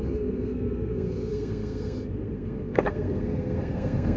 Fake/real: fake